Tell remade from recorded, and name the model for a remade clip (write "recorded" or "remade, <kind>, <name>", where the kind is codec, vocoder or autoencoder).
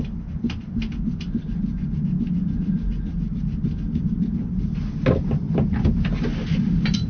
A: recorded